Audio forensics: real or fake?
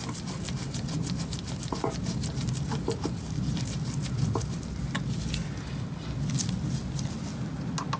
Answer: real